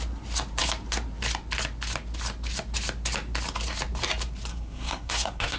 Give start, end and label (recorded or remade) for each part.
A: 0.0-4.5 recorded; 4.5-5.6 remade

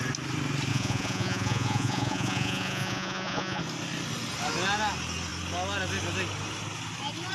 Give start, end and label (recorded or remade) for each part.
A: 0.0-0.7 recorded; 0.7-3.6 remade; 3.6-7.3 recorded

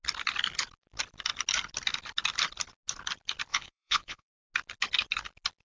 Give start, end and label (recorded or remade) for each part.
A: 0.0-3.5 recorded; 3.5-4.3 remade; 4.3-5.7 recorded

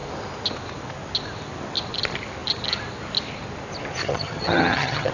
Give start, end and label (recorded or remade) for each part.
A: 0.0-4.0 recorded; 4.0-5.1 remade

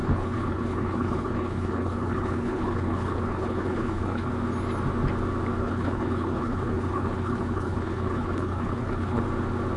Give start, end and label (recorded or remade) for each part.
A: 0.0-4.3 remade; 4.3-5.6 recorded; 5.6-9.2 remade; 9.2-9.8 recorded

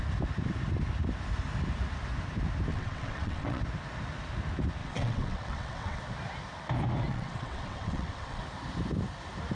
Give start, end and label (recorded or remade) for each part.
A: 0.0-2.7 recorded; 2.7-3.6 remade; 3.6-4.8 recorded; 4.8-6.0 remade; 6.0-7.1 recorded; 7.1-8.4 remade; 8.4-9.5 recorded

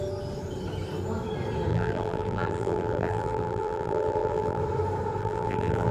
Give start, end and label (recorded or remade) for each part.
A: 0.0-1.7 recorded; 1.7-4.6 remade; 4.6-5.2 recorded; 5.2-5.9 remade